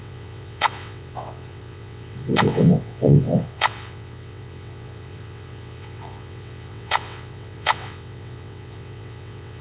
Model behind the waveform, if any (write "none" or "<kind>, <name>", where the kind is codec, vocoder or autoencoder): vocoder, WaveNeXt